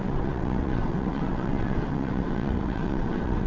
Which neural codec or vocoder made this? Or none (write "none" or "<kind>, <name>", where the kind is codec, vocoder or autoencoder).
vocoder, WaveNeXt